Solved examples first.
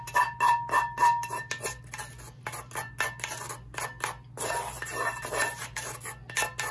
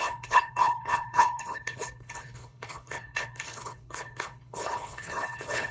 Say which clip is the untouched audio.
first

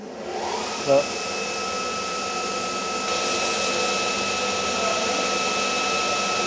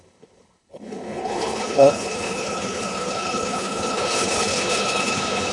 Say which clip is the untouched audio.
first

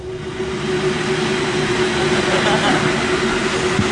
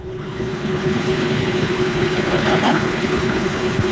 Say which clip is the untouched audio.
first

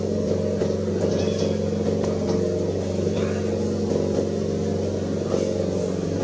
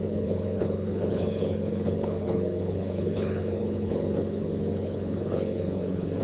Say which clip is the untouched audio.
first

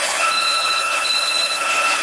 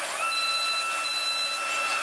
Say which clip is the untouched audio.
second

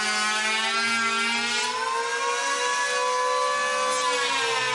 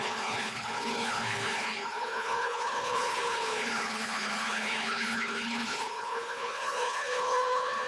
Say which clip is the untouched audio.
first